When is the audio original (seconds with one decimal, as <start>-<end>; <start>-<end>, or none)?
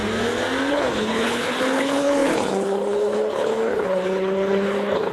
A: 0.0-0.7